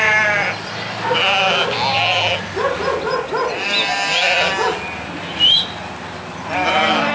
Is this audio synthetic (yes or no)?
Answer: no